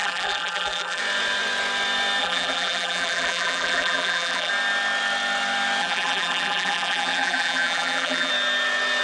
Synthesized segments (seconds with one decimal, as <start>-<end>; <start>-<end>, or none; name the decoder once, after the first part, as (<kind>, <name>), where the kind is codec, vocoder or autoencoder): 0.0-1.0 (vocoder, BigVGAN v2); 2.2-4.5; 5.8-8.3